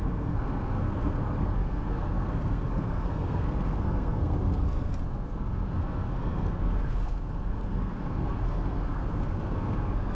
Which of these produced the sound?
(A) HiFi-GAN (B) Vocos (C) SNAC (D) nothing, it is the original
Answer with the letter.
C